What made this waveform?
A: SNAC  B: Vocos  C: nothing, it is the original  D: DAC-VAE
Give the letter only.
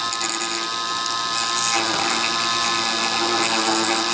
C